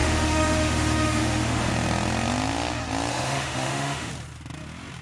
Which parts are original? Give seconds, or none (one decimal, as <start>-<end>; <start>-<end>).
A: 1.7-3.1; 4.1-5.0